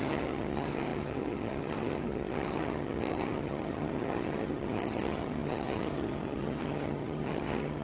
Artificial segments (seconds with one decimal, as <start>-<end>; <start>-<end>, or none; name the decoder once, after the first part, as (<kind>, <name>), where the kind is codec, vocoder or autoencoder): 0.0-7.8 (vocoder, HiFi-GAN)